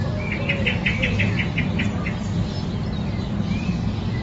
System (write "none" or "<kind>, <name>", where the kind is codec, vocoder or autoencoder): none